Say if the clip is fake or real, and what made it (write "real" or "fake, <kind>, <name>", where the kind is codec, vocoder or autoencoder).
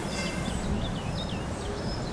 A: real